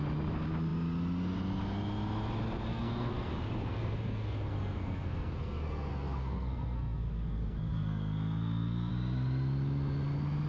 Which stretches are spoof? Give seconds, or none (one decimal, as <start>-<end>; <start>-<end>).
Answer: 2.7-3.3; 3.7-8.9